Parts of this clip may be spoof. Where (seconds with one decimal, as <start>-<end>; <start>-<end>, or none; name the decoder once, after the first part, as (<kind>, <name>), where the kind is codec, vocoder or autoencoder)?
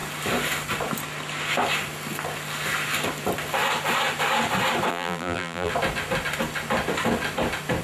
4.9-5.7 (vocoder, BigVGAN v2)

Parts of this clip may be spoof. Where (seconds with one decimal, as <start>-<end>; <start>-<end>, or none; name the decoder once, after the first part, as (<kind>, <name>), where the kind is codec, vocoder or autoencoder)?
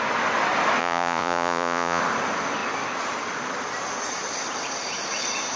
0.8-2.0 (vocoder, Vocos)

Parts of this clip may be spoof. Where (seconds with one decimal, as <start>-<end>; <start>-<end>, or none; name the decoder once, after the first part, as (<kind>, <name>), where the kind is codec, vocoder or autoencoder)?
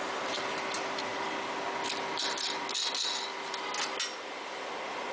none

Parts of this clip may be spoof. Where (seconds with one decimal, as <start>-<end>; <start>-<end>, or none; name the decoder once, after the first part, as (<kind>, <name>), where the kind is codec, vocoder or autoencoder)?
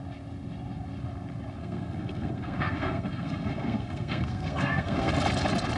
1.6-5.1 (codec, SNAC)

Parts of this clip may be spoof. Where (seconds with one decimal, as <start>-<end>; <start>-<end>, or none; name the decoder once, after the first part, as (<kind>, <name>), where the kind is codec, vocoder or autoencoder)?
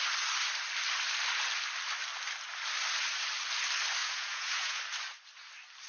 4.0-4.8 (vocoder, Vocos)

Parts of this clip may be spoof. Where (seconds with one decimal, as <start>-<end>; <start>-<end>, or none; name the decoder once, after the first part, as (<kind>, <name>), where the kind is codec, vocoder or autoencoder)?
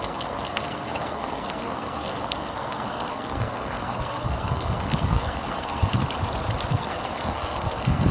0.0-6.0 (codec, SNAC); 6.7-8.1